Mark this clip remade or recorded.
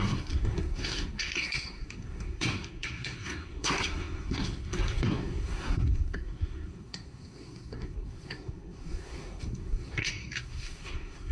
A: remade